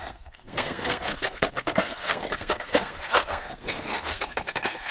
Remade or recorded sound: remade